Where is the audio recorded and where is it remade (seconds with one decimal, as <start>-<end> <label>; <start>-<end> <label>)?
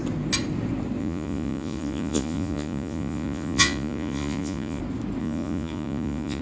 0.0-1.0 recorded; 1.0-4.8 remade; 4.8-5.2 recorded; 5.2-6.4 remade